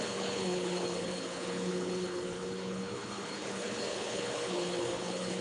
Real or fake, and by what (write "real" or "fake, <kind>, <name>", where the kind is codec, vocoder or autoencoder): fake, codec, HILCodec